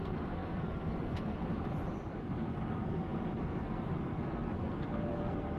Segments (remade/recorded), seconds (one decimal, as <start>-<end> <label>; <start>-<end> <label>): 0.0-1.5 remade; 1.5-2.1 recorded; 2.1-5.6 remade